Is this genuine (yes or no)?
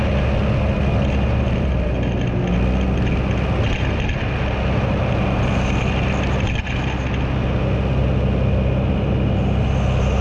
yes